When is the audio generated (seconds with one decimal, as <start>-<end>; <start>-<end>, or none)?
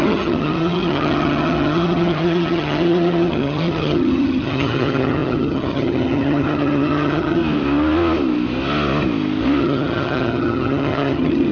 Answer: 0.0-7.4; 9.6-11.5